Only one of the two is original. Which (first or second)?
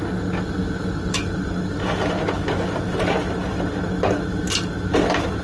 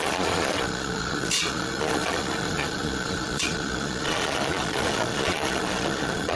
first